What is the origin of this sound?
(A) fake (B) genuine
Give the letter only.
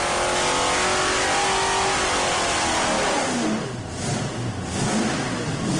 B